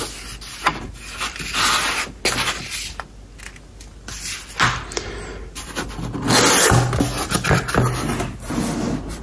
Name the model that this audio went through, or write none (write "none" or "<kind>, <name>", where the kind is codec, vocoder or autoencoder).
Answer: none